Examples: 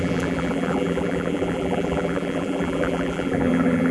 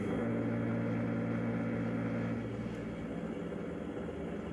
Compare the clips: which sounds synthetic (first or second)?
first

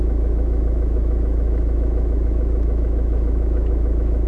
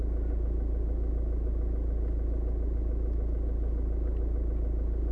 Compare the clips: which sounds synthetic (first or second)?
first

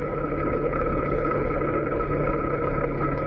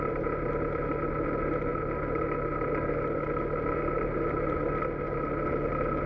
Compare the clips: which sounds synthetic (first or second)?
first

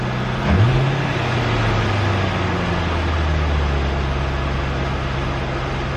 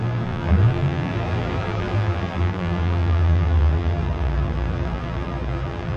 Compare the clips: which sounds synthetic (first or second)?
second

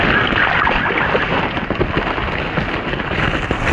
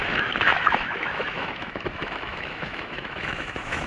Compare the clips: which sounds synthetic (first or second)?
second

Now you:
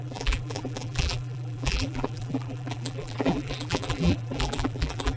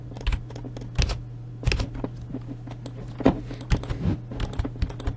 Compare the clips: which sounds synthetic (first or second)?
first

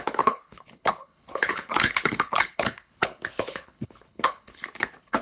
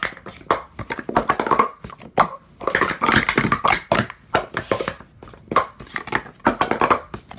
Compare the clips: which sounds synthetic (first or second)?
first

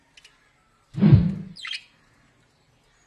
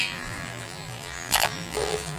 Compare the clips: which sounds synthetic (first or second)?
second